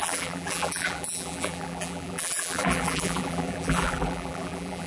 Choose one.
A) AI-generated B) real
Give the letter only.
A